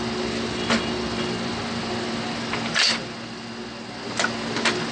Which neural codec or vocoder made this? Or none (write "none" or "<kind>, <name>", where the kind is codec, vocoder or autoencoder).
none